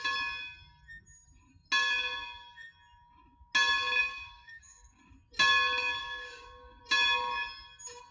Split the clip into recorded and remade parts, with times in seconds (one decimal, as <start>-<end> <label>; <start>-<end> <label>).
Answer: 0.0-4.0 recorded; 4.0-5.0 remade; 5.0-6.0 recorded; 6.0-6.8 remade; 6.8-8.1 recorded